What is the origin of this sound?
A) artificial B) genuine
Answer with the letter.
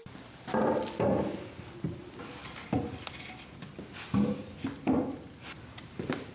B